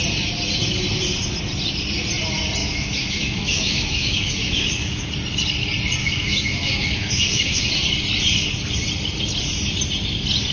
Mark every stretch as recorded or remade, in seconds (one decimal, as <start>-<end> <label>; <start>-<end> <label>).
0.0-2.6 recorded; 2.6-5.1 remade; 5.1-6.0 recorded; 6.0-7.7 remade; 7.7-10.5 recorded